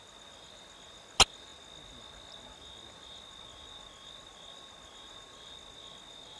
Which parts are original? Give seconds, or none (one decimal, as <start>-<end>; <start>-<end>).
0.0-6.4